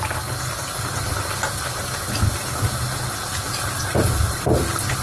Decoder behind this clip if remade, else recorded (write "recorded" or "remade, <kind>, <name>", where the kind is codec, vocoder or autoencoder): recorded